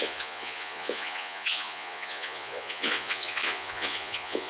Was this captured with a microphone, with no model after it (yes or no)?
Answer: no